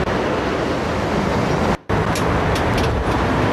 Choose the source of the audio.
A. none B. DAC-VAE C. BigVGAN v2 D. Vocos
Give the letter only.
A